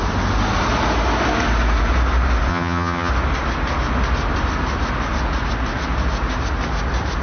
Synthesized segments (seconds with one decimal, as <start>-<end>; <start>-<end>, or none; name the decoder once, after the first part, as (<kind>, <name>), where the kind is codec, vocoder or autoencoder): 2.5-3.1 (vocoder, HiFi-GAN)